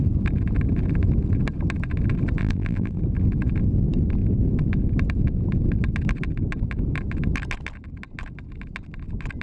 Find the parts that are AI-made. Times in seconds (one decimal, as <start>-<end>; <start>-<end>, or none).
2.4-3.0